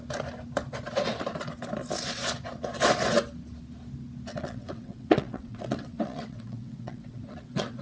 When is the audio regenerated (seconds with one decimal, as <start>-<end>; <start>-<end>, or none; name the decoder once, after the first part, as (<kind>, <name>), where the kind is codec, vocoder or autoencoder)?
4.3-7.8 (vocoder, WaveNeXt)